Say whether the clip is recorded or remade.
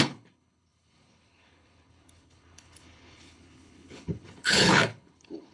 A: remade